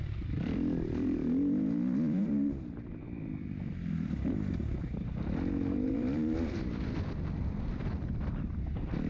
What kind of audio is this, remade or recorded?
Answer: remade